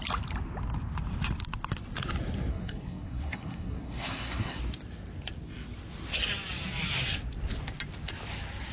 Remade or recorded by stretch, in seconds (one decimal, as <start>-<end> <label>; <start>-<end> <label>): 0.0-2.5 recorded; 2.5-4.6 remade; 4.6-8.7 recorded